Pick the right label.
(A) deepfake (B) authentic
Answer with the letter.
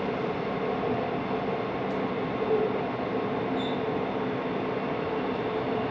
B